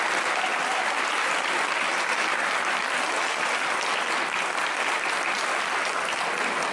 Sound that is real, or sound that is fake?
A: real